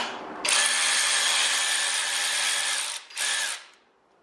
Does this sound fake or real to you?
real